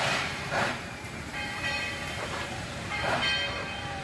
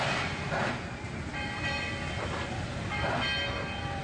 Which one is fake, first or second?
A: first